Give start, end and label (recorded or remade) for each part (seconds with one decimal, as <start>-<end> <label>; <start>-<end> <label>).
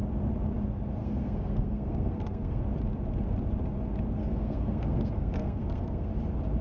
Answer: 0.0-1.0 recorded; 1.0-2.6 remade; 2.6-4.2 recorded; 4.2-6.1 remade; 6.1-6.6 recorded